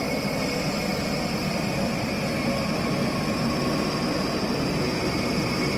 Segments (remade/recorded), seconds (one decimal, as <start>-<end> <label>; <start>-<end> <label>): 0.0-5.8 recorded